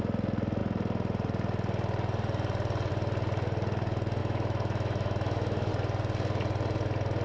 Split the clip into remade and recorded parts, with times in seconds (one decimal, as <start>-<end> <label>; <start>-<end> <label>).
0.0-4.2 recorded; 4.2-5.7 remade; 5.7-7.2 recorded